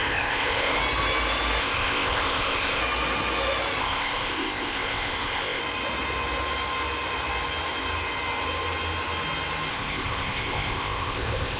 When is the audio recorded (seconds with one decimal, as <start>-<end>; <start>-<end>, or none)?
0.8-1.6; 2.8-3.8; 5.6-9.7